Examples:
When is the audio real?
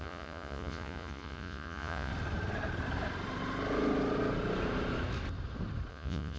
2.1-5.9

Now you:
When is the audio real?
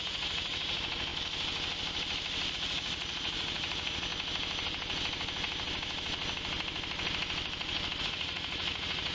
1.1-2.5; 4.1-8.0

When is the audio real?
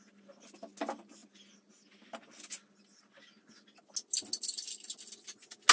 0.0-5.7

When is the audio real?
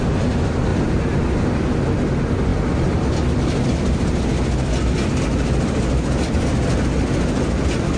0.0-8.0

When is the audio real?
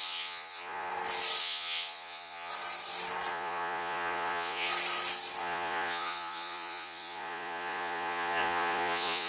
0.9-1.4; 2.5-3.3; 4.7-5.4